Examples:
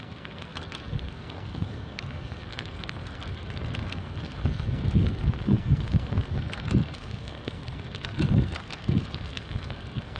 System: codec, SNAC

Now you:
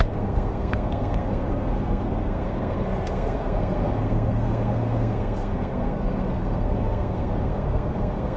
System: codec, SNAC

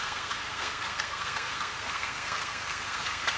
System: codec, SNAC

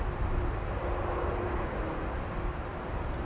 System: none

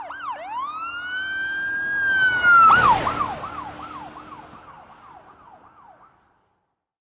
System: none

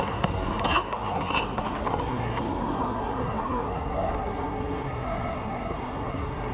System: codec, SNAC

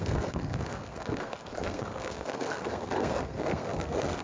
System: codec, SNAC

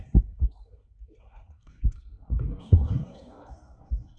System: codec, SNAC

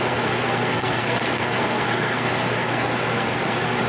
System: codec, SNAC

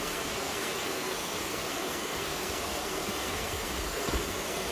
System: codec, SNAC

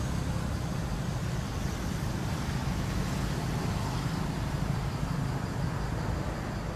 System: none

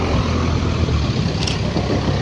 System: none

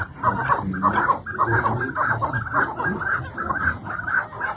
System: none